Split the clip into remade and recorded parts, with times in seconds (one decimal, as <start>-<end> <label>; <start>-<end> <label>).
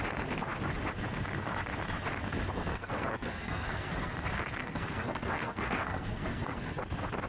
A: 0.0-2.7 recorded; 2.7-4.1 remade; 4.1-4.6 recorded; 4.6-6.8 remade; 6.8-7.3 recorded